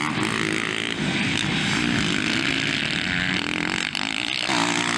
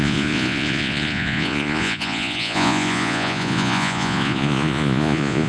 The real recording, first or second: first